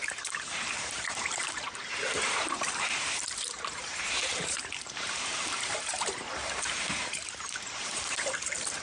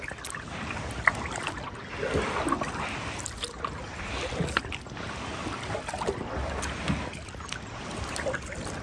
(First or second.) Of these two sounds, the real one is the second